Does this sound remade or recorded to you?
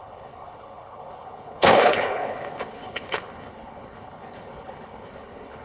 remade